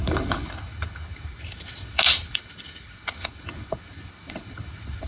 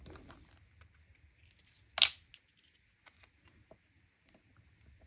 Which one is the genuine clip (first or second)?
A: second